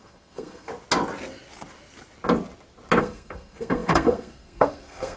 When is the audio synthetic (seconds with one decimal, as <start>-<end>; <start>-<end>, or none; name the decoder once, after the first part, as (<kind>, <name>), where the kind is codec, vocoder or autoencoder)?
0.0-0.7 (codec, SNAC); 3.0-5.2